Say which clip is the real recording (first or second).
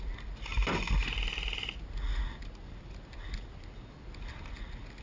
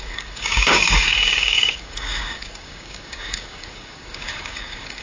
first